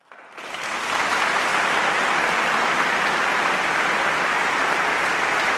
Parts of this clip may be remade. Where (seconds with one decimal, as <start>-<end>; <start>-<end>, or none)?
none